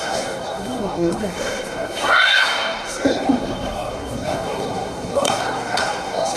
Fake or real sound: fake